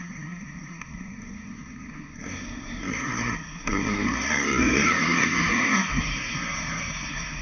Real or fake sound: fake